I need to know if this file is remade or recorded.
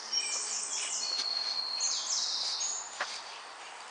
recorded